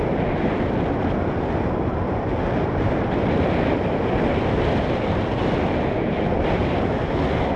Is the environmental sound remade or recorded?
recorded